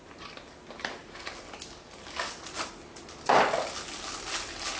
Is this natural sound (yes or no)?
yes